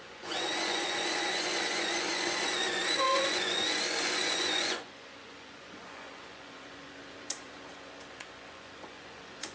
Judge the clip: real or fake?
fake